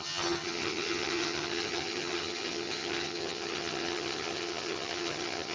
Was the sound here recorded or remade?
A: remade